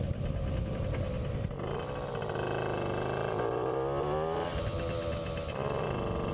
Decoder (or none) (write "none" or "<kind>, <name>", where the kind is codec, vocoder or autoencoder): none